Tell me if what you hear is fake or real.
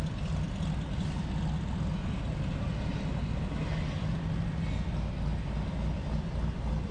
real